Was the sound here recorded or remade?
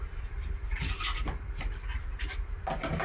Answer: recorded